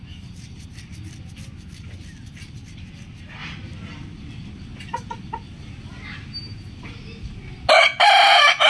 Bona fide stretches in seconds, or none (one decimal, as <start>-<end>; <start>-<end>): 0.0-8.7